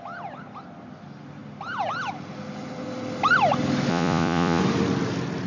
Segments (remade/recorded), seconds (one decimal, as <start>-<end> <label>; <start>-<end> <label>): 0.0-3.9 recorded; 3.9-4.6 remade; 4.6-5.5 recorded